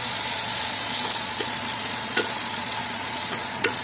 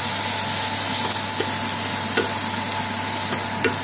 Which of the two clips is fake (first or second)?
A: first